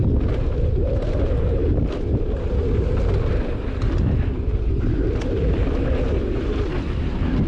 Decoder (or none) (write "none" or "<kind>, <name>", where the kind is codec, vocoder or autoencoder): none